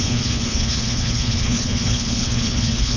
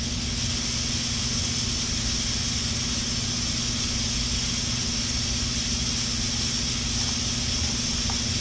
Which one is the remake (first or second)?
first